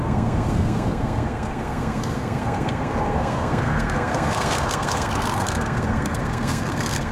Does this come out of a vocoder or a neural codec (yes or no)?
yes